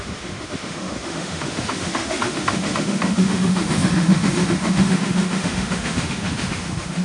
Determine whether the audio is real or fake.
fake